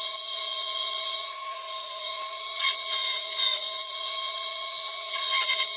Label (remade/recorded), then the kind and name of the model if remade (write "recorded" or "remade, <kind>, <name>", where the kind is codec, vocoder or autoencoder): remade, vocoder, Vocos